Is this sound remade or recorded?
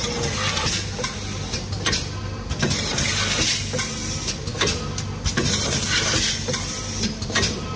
recorded